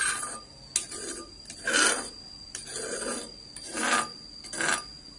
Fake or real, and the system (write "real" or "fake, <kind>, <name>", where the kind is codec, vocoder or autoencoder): real